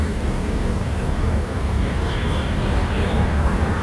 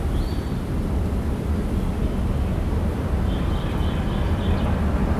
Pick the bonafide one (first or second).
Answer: second